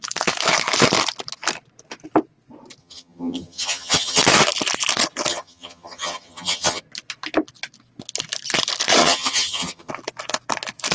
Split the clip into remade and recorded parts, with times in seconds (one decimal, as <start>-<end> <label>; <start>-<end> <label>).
0.0-2.8 recorded; 2.8-4.2 remade; 4.2-5.3 recorded; 5.3-6.8 remade; 6.8-9.0 recorded; 9.0-9.9 remade; 9.9-10.9 recorded